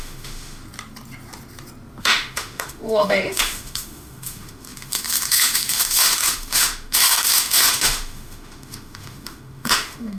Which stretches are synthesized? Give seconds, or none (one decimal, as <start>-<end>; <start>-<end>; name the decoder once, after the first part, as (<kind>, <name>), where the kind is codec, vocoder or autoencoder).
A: 0.0-0.6 (autoencoder, DAC-VAE); 2.0-10.2